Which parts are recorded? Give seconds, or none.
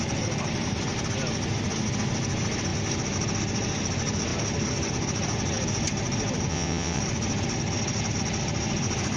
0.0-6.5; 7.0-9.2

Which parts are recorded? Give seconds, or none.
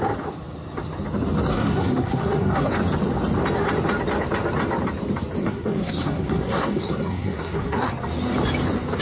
0.0-1.5; 2.7-5.4; 7.9-9.0